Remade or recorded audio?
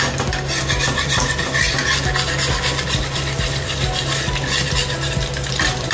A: recorded